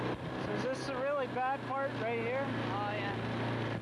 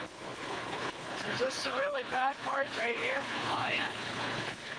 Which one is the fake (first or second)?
second